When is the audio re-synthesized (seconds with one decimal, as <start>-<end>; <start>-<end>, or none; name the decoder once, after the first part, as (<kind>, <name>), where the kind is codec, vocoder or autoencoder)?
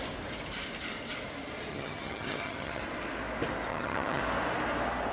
1.7-2.8 (vocoder, HiFi-GAN); 3.7-4.2